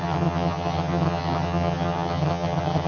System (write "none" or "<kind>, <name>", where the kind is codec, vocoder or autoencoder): vocoder, HiFi-GAN